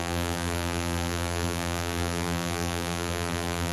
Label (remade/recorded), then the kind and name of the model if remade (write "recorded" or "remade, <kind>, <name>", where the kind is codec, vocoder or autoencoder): remade, vocoder, BigVGAN v2